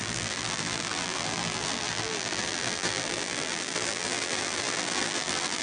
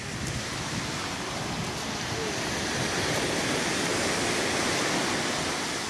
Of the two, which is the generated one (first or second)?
first